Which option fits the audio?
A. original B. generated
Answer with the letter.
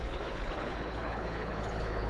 B